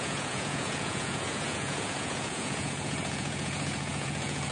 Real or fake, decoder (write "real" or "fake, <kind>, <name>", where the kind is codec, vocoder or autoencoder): fake, vocoder, Vocos